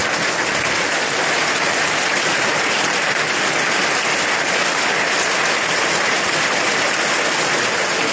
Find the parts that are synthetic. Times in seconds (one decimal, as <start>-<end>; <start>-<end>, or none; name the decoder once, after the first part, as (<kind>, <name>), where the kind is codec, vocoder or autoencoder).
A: none